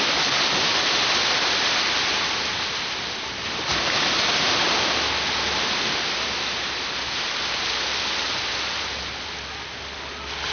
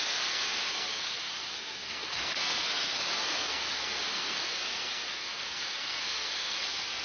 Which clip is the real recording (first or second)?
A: first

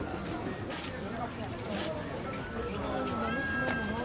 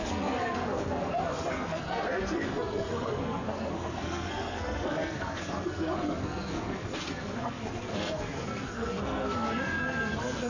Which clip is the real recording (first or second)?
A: first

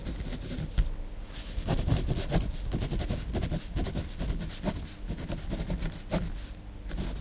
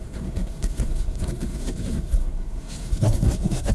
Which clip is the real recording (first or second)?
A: first